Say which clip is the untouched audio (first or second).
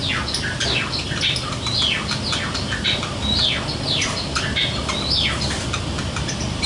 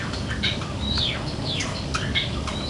first